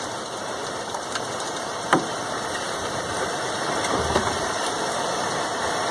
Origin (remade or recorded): remade